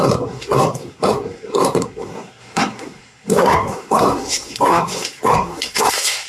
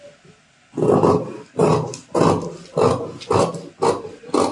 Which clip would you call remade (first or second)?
first